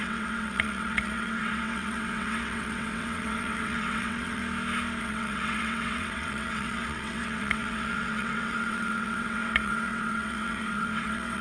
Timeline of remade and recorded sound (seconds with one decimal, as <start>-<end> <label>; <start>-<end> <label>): 0.0-4.4 remade; 4.4-5.0 recorded; 5.0-11.4 remade